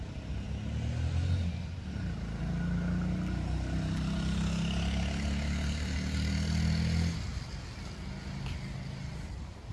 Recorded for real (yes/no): yes